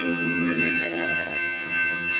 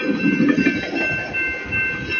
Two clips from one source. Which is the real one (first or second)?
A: second